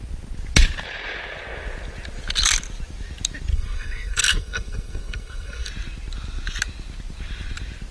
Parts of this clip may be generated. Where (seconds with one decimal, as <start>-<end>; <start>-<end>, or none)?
3.5-5.7

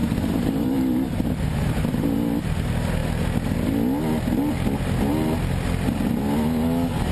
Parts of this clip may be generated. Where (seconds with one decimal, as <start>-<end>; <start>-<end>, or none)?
0.0-2.4

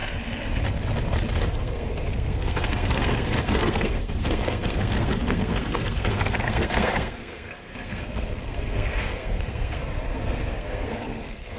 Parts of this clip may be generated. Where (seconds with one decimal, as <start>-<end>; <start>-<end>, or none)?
1.5-11.6

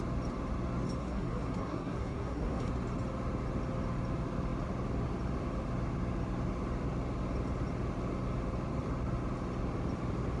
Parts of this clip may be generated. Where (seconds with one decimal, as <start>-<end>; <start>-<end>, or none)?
1.0-2.7

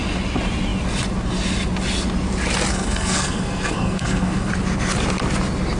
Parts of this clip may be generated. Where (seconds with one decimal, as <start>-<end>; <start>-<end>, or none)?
2.7-4.5

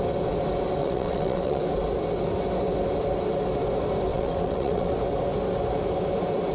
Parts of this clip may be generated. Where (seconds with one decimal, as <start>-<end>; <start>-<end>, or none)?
0.8-1.6; 4.1-4.9